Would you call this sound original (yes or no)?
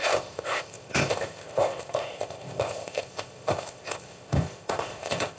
no